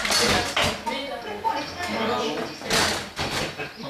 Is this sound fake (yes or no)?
no